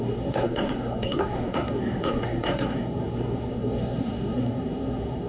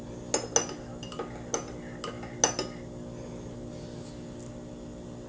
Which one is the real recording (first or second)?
second